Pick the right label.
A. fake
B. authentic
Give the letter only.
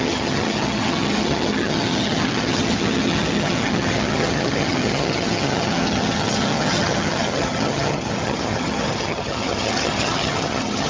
A